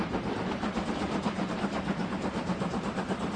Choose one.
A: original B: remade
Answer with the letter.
B